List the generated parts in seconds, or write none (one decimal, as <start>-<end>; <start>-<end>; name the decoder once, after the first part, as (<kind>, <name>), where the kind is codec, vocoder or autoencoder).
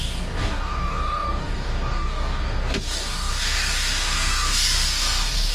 0.0-5.5 (codec, DAC)